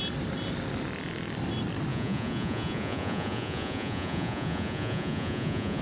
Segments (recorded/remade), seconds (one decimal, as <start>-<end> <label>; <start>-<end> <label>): 0.0-1.9 recorded; 1.9-5.8 remade